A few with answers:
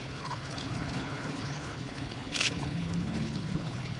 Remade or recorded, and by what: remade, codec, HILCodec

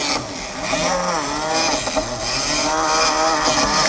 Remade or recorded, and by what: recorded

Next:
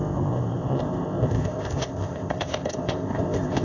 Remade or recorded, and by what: remade, codec, ZipCodec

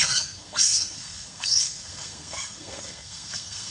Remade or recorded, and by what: remade, codec, SNAC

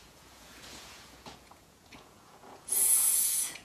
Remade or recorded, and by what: remade, vocoder, Vocos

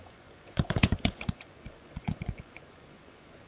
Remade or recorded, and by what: remade, vocoder, Vocos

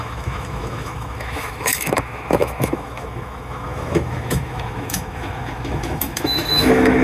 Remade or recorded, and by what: remade, autoencoder, DAC-VAE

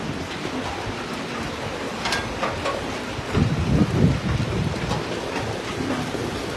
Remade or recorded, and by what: recorded